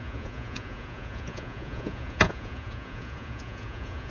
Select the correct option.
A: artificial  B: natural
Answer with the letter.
A